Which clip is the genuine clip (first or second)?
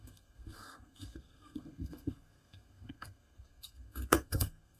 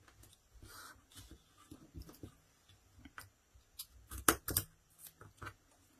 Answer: second